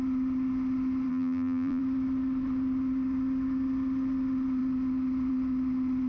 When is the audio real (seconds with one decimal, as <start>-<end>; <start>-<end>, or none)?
0.0-1.1; 1.8-6.1